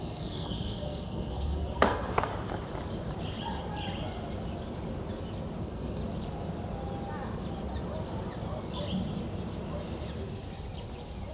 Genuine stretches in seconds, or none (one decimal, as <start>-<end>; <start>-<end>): 2.3-5.6; 6.0-11.3